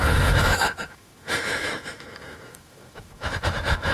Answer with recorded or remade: remade